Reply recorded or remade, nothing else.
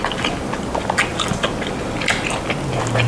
recorded